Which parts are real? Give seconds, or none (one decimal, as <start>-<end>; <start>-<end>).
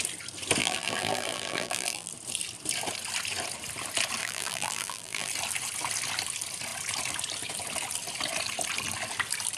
0.0-0.6; 2.1-4.2; 5.3-9.6